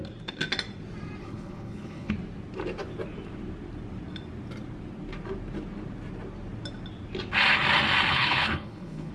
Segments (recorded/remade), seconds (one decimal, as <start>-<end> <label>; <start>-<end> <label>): 0.0-1.2 recorded; 1.2-2.1 remade; 2.1-8.1 recorded; 8.1-9.1 remade